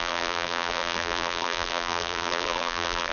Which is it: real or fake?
fake